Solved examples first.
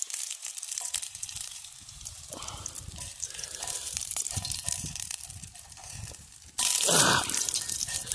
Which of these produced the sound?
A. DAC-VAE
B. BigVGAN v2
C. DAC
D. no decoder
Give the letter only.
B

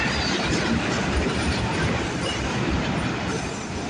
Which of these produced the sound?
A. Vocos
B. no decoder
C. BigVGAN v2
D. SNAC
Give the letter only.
C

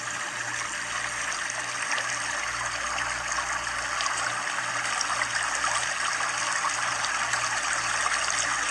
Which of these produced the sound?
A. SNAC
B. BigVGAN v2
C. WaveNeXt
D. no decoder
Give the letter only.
D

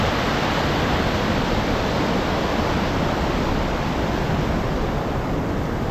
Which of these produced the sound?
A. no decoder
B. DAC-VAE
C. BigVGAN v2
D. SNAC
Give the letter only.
A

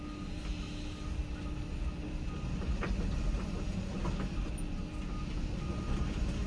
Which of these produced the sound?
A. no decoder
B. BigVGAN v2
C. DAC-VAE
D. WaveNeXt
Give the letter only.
A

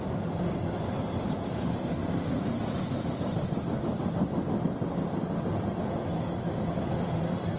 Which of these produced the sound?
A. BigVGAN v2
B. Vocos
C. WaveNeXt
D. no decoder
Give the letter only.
A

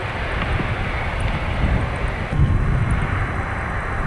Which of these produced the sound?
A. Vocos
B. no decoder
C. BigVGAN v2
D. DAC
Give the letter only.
B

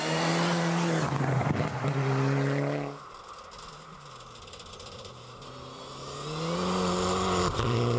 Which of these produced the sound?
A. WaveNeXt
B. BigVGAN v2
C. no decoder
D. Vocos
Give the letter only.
C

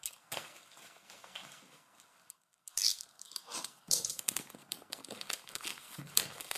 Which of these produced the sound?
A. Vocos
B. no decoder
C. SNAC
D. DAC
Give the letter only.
C